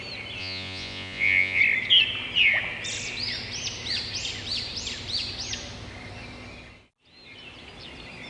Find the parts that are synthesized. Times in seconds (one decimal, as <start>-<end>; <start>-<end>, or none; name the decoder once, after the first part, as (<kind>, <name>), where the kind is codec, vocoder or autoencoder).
0.4-1.6 (vocoder, Vocos)

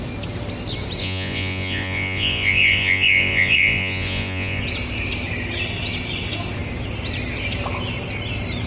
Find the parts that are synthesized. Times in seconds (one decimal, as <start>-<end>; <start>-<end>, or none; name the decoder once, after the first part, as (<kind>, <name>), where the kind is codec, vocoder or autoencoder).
1.0-4.6 (vocoder, Vocos)